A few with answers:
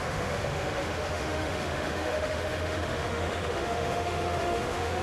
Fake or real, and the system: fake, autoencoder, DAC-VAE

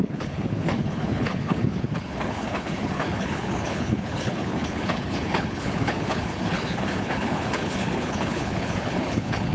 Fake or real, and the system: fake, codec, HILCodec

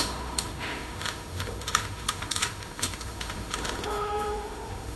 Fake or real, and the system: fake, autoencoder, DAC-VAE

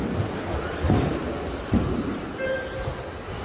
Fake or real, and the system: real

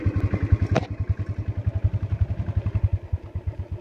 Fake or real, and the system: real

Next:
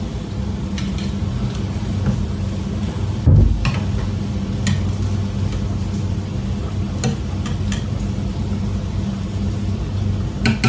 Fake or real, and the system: real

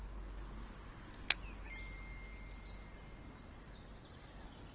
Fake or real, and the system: real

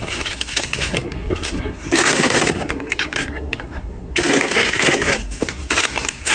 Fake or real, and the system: fake, codec, SNAC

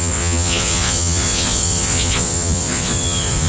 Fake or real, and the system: fake, vocoder, Vocos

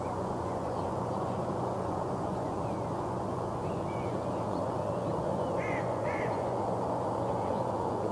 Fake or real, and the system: fake, vocoder, Vocos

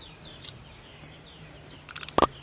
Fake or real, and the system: real